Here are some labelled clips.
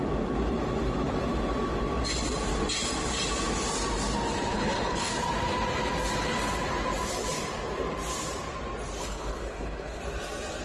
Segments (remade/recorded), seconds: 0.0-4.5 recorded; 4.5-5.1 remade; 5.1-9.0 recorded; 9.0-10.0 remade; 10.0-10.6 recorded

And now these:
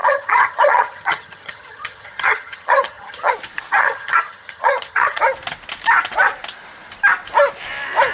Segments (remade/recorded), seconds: 0.0-3.3 remade; 3.3-3.8 recorded; 3.8-5.2 remade; 5.2-8.1 recorded

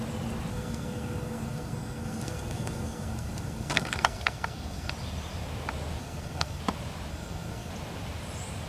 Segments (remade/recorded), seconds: 0.0-0.5 recorded; 0.5-4.9 remade; 4.9-6.0 recorded; 6.0-6.6 remade; 6.6-7.1 recorded; 7.1-7.7 remade; 7.7-8.7 recorded

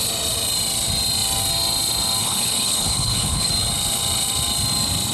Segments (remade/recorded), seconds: 0.0-2.2 recorded; 2.2-3.5 remade; 3.5-5.1 recorded

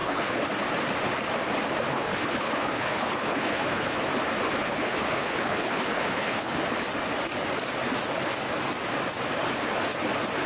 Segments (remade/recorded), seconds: 0.0-0.5 remade; 0.5-1.9 recorded; 1.9-4.0 remade; 4.0-4.6 recorded; 4.6-6.6 remade; 6.6-10.5 recorded

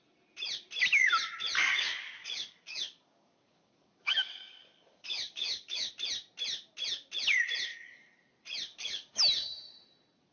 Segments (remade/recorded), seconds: 0.0-1.6 recorded; 1.6-5.9 remade; 5.9-7.7 recorded; 7.7-8.2 remade; 8.2-8.7 recorded; 8.7-9.2 remade; 9.2-10.3 recorded